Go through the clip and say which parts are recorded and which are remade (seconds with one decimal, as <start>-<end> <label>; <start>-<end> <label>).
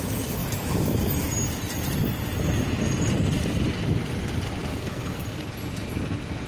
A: 0.0-4.7 recorded; 4.7-5.4 remade; 5.4-6.5 recorded